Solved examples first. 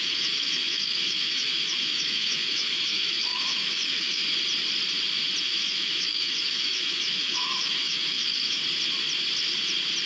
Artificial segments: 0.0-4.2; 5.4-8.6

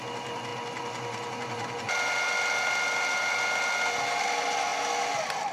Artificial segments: none

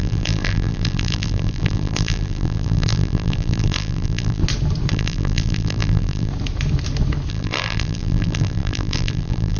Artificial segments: 0.0-4.4; 4.9-6.3; 7.3-9.6

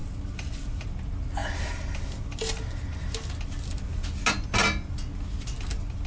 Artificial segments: none

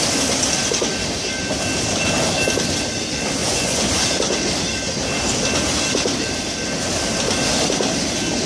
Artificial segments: 3.4-3.9